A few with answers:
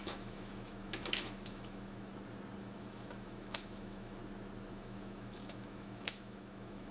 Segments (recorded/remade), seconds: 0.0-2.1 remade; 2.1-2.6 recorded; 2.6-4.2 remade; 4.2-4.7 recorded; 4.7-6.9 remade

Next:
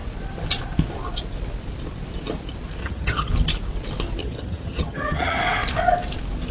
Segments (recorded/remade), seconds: 0.0-2.8 recorded; 2.8-3.3 remade; 3.3-4.2 recorded; 4.2-5.4 remade; 5.4-6.5 recorded

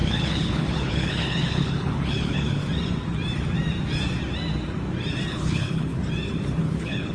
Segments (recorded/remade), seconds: 0.0-2.6 remade; 2.6-5.3 recorded; 5.3-6.0 remade; 6.0-6.6 recorded; 6.6-7.1 remade

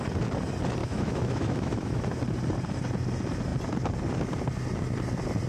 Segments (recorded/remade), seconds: 0.0-0.8 recorded; 0.8-2.0 remade; 2.0-5.5 recorded

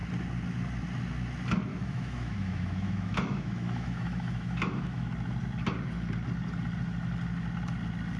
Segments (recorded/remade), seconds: 0.0-1.7 recorded; 1.7-5.1 remade; 5.1-8.2 recorded

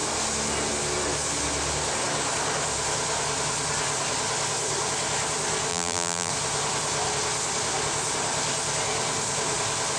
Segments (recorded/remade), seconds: 0.0-5.7 recorded; 5.7-6.3 remade; 6.3-10.0 recorded

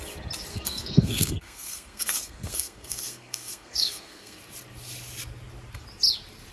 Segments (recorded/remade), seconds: 0.0-0.5 recorded; 0.5-4.4 remade; 4.4-6.5 recorded